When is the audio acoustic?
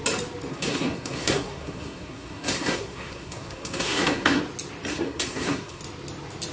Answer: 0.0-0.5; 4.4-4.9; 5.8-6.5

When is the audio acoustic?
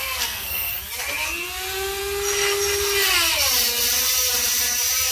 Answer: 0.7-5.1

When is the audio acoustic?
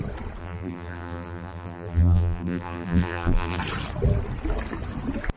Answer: 0.0-0.4; 3.6-5.4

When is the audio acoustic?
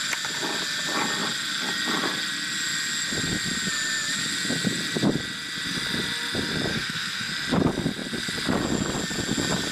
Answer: 0.0-6.7; 7.3-9.7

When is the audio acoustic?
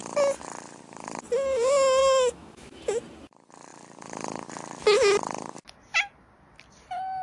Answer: 0.0-2.0; 2.8-7.2